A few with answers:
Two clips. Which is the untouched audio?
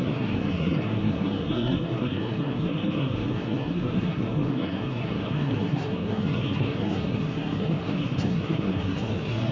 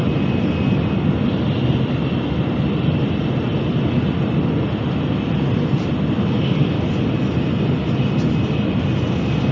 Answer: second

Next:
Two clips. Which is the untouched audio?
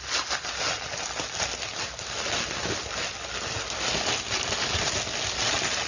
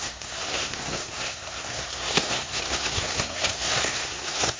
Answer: first